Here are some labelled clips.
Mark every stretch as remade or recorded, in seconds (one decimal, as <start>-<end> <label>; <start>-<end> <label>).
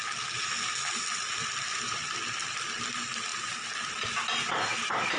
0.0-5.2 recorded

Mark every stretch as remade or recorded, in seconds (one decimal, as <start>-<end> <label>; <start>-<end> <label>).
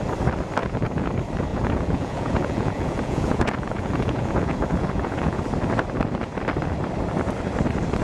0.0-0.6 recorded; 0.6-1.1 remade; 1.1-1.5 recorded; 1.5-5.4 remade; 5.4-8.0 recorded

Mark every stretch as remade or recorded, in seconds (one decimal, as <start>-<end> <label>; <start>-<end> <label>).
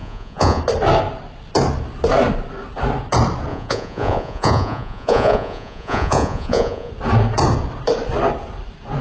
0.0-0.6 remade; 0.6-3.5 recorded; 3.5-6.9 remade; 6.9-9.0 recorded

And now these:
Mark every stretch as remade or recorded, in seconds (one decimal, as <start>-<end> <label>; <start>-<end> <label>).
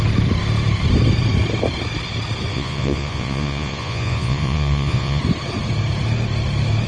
0.0-2.5 recorded; 2.5-5.2 remade; 5.2-6.9 recorded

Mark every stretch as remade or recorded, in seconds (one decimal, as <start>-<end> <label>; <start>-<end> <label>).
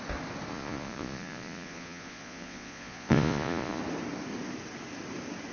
0.0-0.5 recorded; 0.5-3.8 remade; 3.8-5.5 recorded